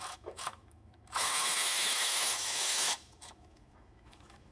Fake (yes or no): yes